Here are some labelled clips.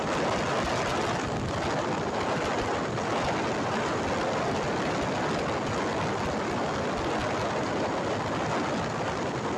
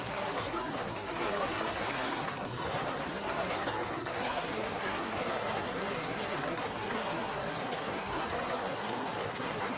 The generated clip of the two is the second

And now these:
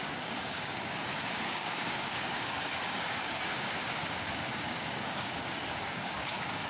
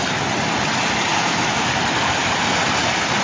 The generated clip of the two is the first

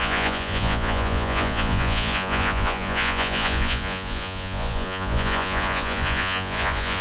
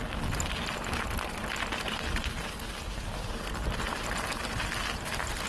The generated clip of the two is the first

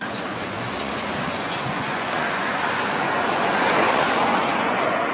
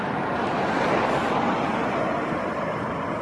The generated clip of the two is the first